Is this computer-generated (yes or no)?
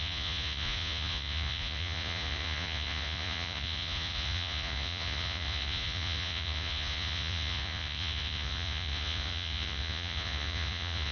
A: yes